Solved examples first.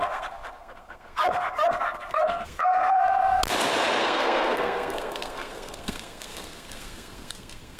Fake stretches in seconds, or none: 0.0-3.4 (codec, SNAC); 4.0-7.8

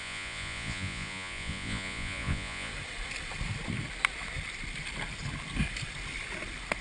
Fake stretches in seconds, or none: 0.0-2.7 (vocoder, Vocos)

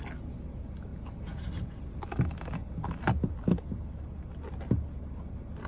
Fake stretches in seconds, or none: none